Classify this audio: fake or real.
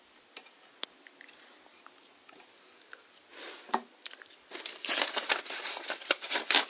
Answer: real